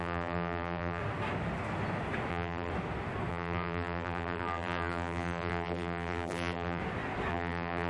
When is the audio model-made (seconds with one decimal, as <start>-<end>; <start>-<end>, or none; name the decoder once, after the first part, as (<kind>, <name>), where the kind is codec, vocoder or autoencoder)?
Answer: 0.0-1.0 (vocoder, BigVGAN v2); 2.3-2.7; 3.3-6.8; 7.3-7.9